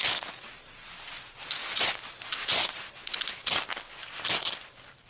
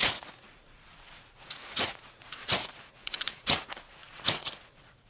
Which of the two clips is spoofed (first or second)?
second